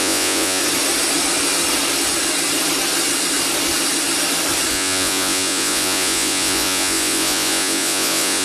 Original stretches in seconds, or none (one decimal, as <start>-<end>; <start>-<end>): 0.6-4.7